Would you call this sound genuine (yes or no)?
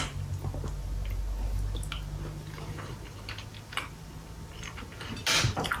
yes